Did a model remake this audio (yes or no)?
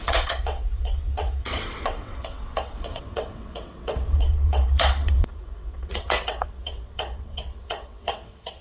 yes